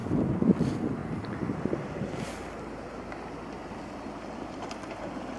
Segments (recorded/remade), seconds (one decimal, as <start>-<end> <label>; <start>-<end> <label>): 0.0-5.4 recorded